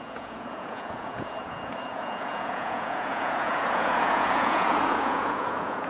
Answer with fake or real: fake